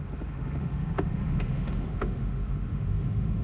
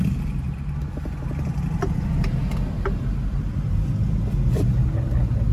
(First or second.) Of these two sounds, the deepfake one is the first